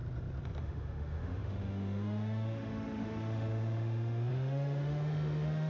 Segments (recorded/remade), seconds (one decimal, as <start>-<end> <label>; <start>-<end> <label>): 0.0-0.6 recorded; 0.6-5.7 remade